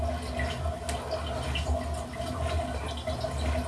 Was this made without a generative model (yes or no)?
yes